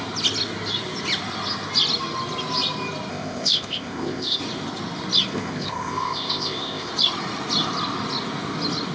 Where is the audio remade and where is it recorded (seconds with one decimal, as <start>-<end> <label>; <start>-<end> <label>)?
0.0-3.1 recorded; 3.1-4.4 remade; 4.4-5.3 recorded; 5.3-6.9 remade; 6.9-8.9 recorded